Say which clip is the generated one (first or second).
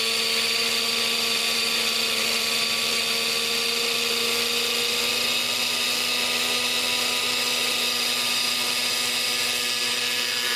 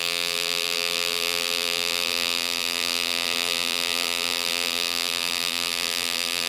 second